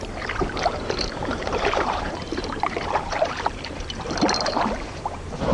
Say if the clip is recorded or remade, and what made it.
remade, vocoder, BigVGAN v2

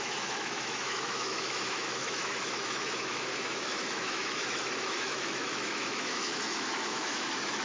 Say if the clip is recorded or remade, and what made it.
remade, autoencoder, DAC-VAE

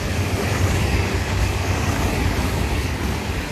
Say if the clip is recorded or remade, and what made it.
remade, codec, DAC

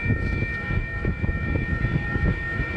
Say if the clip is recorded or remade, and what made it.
remade, autoencoder, DAC-VAE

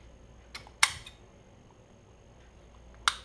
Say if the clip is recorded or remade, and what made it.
recorded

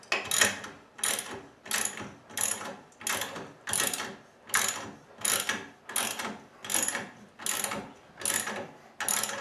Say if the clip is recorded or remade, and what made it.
recorded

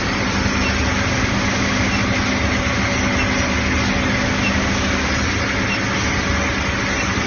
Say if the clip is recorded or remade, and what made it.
recorded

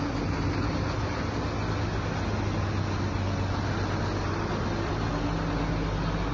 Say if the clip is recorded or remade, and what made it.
recorded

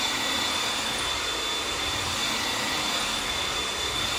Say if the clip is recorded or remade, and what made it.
recorded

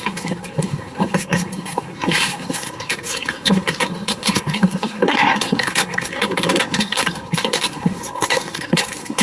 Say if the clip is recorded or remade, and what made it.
remade, codec, SNAC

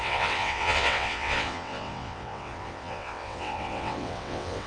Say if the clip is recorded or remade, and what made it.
remade, vocoder, WaveNeXt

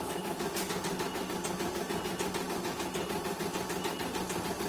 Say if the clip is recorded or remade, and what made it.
recorded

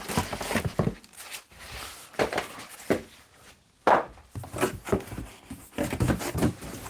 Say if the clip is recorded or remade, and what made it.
recorded